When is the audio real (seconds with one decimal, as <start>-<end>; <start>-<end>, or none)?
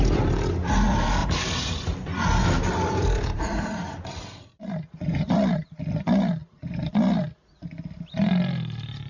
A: 0.0-1.2; 5.8-6.4; 6.9-9.1